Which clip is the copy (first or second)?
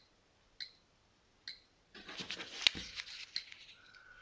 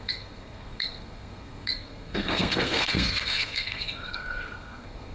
second